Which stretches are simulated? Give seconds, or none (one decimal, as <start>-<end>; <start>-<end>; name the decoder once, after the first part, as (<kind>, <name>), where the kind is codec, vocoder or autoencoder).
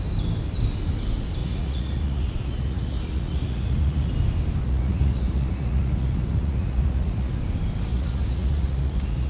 1.4-4.1 (vocoder, Vocos); 4.6-7.4; 7.9-9.3